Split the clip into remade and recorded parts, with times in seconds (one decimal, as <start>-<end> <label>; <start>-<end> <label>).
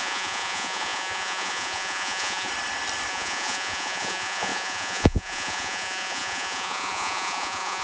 0.0-2.5 remade; 2.5-3.1 recorded; 3.1-7.8 remade